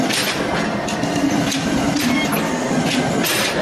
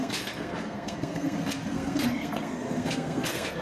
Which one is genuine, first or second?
first